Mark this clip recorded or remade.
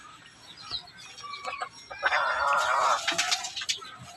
recorded